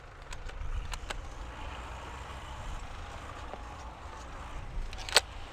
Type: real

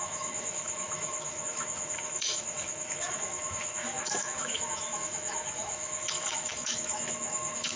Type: fake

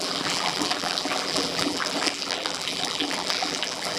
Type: fake